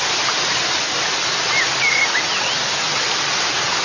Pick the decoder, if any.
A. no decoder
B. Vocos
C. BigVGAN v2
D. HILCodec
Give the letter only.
A